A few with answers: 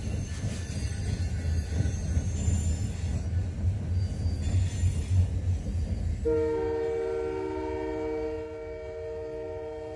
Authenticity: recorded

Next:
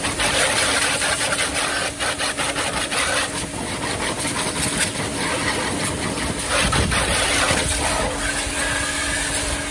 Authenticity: recorded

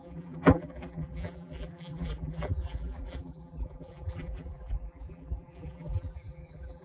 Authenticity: remade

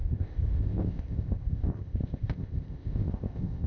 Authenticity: remade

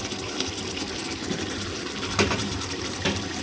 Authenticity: recorded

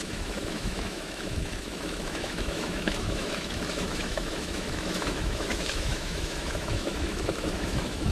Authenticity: remade